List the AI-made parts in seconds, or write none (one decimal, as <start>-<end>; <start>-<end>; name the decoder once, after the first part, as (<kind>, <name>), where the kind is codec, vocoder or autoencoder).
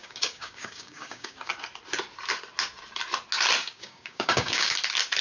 0.0-1.5 (codec, DAC); 3.6-4.7